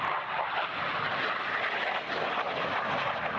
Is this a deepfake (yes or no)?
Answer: no